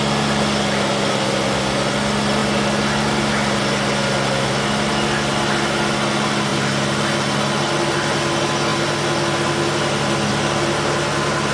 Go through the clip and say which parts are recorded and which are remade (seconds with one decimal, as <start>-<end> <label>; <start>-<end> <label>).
0.0-11.5 recorded